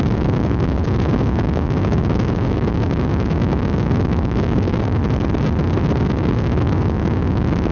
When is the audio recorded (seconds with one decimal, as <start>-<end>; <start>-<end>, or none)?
5.0-6.0